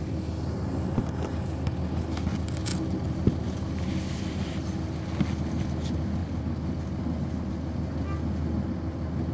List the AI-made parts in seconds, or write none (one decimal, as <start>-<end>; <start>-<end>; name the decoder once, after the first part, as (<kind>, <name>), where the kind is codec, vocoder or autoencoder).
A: none